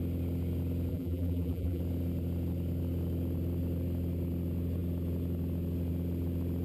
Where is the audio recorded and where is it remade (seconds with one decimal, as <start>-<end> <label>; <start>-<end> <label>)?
0.0-0.9 recorded; 0.9-1.8 remade; 1.8-6.6 recorded